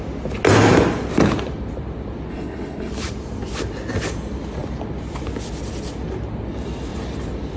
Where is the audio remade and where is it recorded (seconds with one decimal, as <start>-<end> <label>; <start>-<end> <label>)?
0.0-2.3 recorded; 2.3-2.9 remade; 2.9-7.6 recorded